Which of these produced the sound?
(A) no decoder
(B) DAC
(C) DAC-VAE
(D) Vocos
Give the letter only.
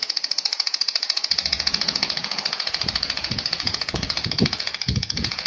D